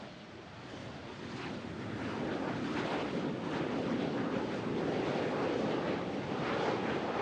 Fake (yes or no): no